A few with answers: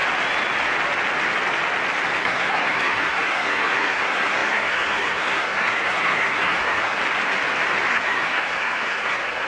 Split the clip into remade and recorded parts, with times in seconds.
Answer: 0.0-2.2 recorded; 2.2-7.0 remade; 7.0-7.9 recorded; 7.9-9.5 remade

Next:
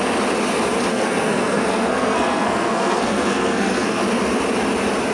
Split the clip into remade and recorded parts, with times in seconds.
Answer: 0.0-0.9 recorded; 0.9-4.0 remade; 4.0-5.1 recorded